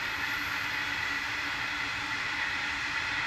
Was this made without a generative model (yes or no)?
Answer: yes